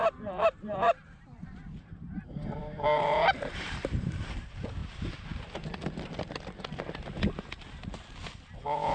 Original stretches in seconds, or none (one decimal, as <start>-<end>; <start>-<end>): 4.3-4.8; 5.4-8.9